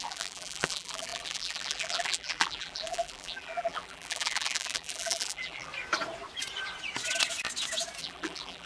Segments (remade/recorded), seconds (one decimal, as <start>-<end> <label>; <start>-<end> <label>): 0.0-5.7 remade; 5.7-8.0 recorded; 8.0-8.7 remade